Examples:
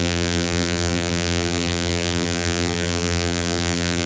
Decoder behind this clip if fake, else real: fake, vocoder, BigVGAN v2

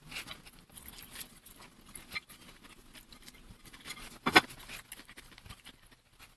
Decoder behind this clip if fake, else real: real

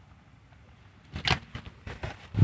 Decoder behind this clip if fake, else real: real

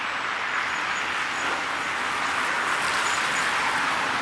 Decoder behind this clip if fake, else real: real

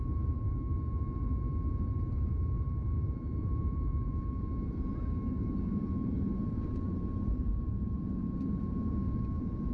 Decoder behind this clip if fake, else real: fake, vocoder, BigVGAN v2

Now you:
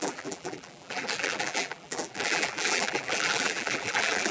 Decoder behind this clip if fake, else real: fake, vocoder, BigVGAN v2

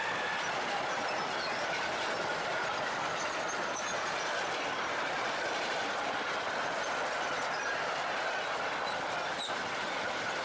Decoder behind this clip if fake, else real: real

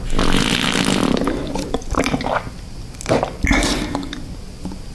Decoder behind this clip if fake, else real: real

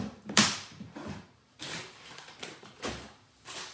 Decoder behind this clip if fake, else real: fake, vocoder, BigVGAN v2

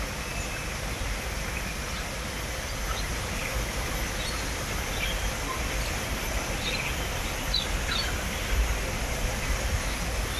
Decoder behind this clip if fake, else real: real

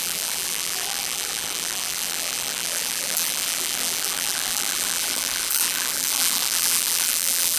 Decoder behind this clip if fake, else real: fake, vocoder, BigVGAN v2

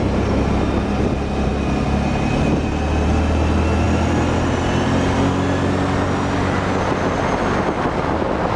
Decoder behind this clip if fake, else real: real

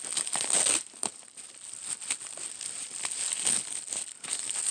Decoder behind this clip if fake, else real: real